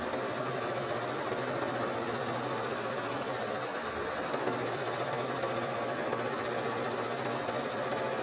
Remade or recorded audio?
recorded